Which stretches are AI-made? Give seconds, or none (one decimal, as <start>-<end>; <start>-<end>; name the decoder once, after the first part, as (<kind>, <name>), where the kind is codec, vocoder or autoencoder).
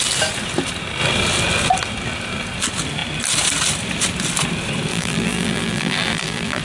4.9-6.6 (vocoder, BigVGAN v2)